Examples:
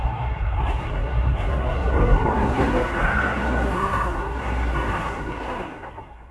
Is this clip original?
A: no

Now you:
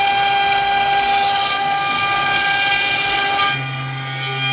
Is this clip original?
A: yes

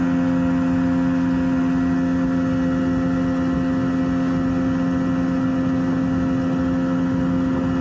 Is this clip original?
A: yes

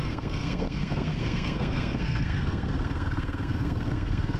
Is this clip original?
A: no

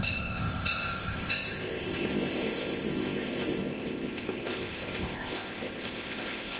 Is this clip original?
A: no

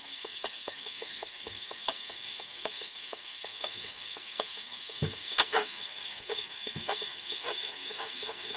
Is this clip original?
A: no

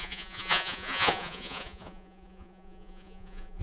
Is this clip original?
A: no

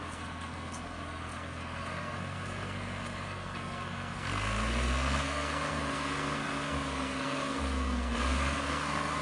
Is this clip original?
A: no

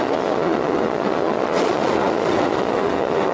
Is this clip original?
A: no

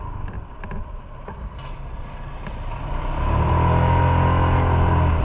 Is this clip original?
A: yes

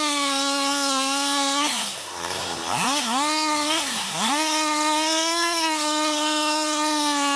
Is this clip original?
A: no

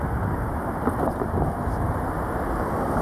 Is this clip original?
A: yes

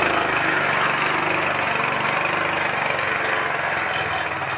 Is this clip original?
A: yes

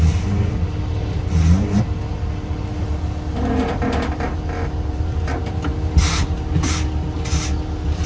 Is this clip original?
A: yes